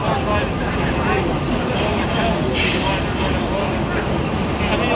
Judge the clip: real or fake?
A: real